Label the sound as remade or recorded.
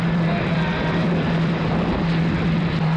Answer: remade